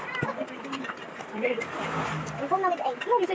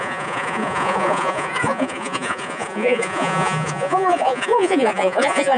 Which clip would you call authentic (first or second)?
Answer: first